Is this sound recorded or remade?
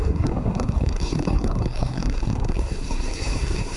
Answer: remade